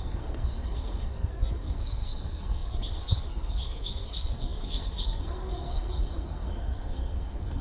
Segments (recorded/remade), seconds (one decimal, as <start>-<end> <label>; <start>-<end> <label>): 0.0-7.6 remade